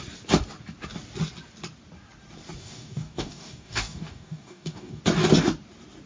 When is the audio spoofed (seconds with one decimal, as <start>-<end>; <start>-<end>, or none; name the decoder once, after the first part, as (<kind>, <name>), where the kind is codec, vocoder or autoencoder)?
2.6-5.0 (codec, DAC)